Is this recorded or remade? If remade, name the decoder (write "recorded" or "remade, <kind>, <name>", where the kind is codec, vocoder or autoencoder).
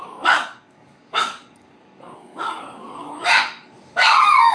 remade, codec, DAC